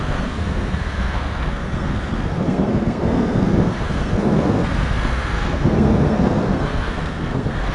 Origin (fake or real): fake